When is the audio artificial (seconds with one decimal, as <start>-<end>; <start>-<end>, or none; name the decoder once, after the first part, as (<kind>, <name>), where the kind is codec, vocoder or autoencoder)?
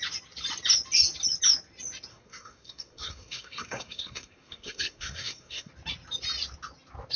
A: 2.1-5.7 (codec, SNAC)